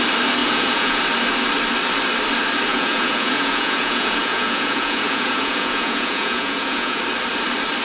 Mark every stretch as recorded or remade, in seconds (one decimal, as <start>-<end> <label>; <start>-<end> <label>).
0.0-0.4 recorded; 0.4-1.0 remade; 1.0-2.7 recorded; 2.7-7.0 remade; 7.0-7.8 recorded